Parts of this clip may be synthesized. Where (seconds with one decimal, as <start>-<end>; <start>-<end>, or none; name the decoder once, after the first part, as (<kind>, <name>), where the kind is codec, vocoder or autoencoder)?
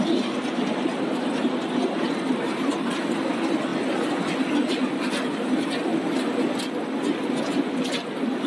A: 1.8-2.9 (vocoder, BigVGAN v2)